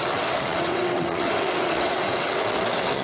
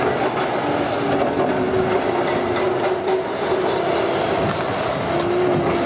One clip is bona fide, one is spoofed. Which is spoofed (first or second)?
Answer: first